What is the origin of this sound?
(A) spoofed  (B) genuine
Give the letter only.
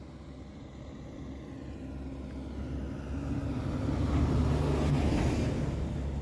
B